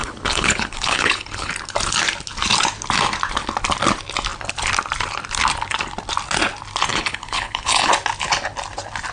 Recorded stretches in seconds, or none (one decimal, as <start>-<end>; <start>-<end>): 1.5-6.9; 7.9-9.1